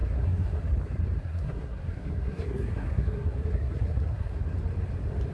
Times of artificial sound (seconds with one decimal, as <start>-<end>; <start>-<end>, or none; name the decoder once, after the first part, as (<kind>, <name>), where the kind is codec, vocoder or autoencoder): 0.0-0.6 (codec, SNAC); 1.2-4.4

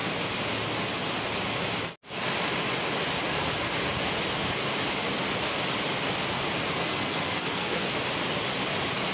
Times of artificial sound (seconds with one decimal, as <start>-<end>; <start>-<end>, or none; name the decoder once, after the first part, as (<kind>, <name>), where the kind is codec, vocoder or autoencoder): 6.8-7.9 (codec, SNAC)

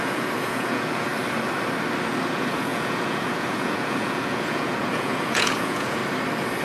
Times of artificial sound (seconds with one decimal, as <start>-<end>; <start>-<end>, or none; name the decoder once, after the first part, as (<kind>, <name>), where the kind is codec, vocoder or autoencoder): 0.0-1.1 (vocoder, Vocos); 2.3-6.0

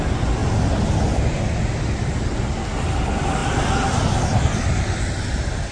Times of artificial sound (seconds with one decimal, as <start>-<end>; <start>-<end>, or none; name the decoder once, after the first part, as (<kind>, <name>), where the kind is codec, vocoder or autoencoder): none

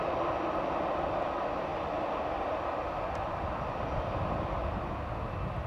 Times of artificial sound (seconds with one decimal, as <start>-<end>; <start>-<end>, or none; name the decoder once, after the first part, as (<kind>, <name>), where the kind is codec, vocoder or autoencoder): none

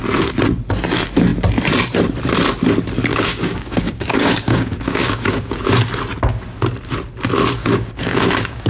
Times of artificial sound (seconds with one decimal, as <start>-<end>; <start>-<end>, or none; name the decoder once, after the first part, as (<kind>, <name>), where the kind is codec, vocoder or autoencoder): 3.1-5.7 (codec, DAC); 7.6-8.7

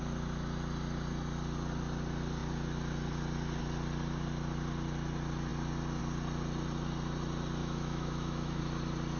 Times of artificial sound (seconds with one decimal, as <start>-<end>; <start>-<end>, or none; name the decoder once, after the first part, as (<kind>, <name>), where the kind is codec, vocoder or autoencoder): 7.6-8.6 (autoencoder, DAC-VAE)